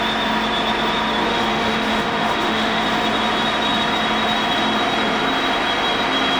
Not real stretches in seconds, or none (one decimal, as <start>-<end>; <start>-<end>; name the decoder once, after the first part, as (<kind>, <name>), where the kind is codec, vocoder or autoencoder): 1.3-2.8 (autoencoder, DAC-VAE)